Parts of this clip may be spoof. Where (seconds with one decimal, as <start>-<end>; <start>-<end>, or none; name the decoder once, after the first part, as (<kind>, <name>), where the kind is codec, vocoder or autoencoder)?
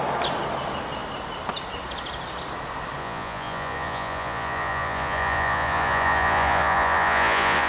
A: 3.0-7.7 (vocoder, Vocos)